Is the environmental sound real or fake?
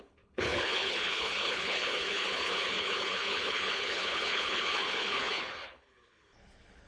fake